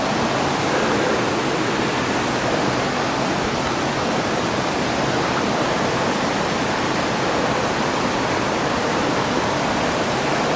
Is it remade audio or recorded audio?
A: recorded